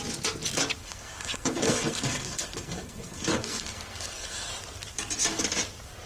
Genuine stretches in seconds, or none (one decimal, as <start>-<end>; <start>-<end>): 0.0-0.8; 4.5-6.1